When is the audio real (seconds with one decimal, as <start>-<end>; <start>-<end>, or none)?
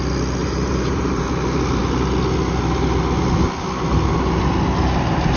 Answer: 0.0-0.4; 1.2-5.4